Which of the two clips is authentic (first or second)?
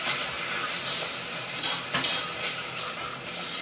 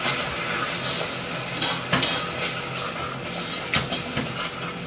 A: second